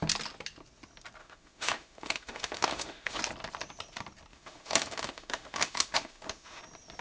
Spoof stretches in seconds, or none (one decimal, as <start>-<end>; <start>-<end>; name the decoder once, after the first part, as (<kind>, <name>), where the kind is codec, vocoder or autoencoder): 1.2-3.2 (autoencoder, DAC-VAE); 4.3-6.6